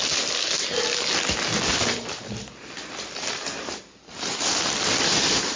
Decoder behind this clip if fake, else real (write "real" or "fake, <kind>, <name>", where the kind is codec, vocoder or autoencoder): real